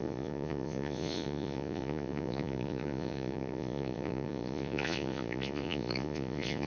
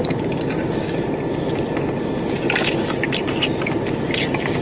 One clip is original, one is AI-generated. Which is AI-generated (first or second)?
first